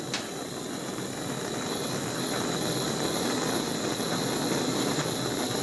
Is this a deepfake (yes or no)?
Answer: no